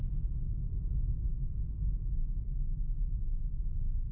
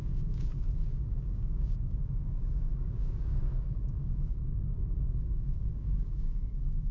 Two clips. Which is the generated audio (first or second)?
second